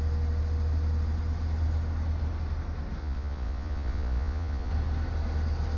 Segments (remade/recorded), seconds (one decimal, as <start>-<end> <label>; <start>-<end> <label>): 0.0-3.0 recorded; 3.0-4.7 remade; 4.7-5.8 recorded